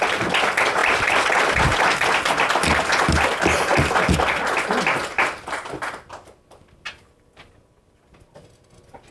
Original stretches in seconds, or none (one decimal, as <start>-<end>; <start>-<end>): 0.0-9.1